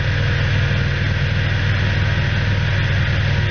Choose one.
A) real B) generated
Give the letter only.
A